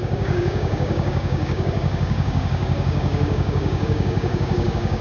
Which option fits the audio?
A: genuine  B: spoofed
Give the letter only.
B